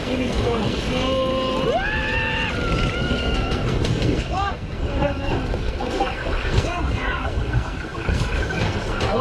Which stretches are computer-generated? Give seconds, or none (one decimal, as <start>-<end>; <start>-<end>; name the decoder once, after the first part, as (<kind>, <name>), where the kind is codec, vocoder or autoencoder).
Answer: 0.0-1.3 (codec, SNAC); 3.0-9.2

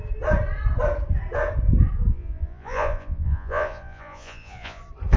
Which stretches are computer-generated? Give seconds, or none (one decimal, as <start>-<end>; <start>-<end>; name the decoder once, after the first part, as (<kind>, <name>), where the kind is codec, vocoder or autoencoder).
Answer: 2.1-4.8 (vocoder, Vocos)

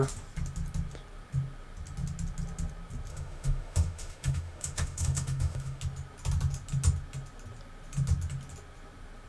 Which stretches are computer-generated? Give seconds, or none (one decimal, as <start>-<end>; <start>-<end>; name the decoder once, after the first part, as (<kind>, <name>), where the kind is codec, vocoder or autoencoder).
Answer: 3.1-5.8 (autoencoder, DAC-VAE)

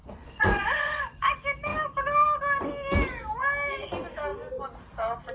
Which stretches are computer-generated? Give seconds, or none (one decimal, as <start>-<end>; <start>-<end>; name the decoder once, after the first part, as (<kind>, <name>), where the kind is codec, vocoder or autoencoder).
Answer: 0.0-1.2 (vocoder, Vocos)

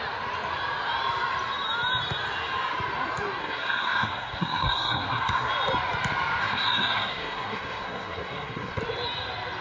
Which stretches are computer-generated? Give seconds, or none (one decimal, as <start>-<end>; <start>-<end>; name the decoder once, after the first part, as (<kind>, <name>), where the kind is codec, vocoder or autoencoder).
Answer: 3.4-5.5 (codec, SNAC); 6.4-8.8

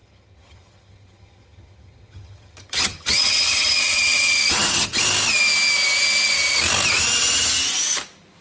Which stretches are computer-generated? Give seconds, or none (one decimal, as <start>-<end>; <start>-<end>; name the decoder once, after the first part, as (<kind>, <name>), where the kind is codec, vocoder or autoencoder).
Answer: 0.0-5.0 (vocoder, HiFi-GAN)